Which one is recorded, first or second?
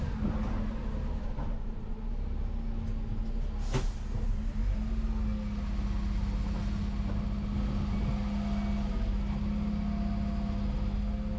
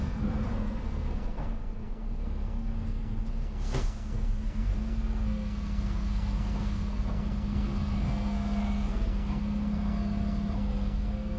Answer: first